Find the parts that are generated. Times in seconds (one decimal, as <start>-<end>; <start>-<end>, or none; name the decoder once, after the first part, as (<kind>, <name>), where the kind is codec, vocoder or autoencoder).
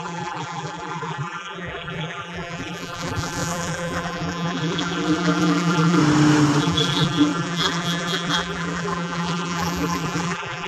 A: 0.0-6.0 (vocoder, BigVGAN v2); 6.6-10.7